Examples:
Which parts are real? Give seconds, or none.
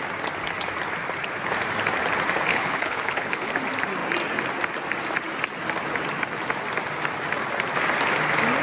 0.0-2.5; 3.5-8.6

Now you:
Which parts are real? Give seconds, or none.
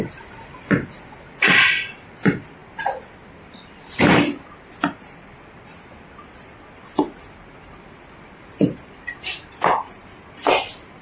0.0-11.0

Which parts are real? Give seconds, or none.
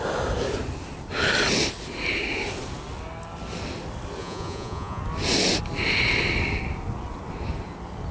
0.0-4.2; 5.0-8.1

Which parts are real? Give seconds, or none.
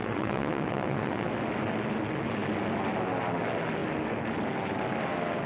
1.3-5.5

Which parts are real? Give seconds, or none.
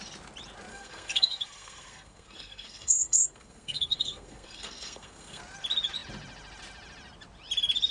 0.0-0.7; 5.4-7.9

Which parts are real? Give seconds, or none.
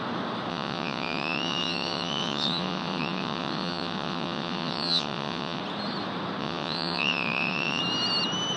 0.0-0.5; 5.6-6.4; 7.8-8.6